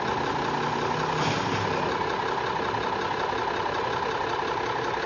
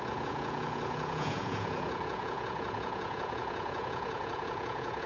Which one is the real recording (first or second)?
first